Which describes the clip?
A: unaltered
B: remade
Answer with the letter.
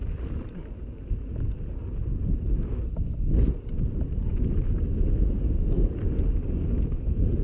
A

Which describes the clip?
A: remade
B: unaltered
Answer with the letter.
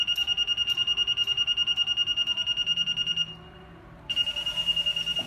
A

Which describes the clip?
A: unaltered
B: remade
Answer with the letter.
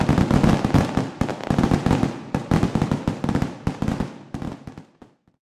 A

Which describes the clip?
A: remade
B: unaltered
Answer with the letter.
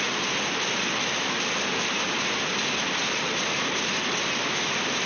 B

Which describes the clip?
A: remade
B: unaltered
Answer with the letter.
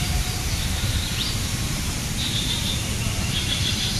A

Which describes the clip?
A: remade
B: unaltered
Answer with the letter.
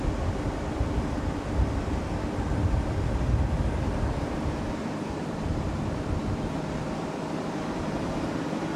A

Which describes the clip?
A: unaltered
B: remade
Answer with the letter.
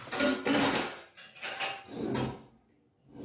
A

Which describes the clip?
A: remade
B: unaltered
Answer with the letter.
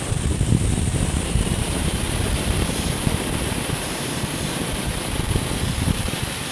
A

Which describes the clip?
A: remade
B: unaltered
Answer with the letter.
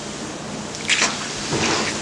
B